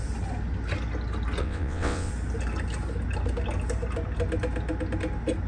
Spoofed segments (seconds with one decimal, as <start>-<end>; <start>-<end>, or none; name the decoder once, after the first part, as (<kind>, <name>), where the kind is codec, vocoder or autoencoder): 1.4-2.1 (vocoder, WaveNeXt)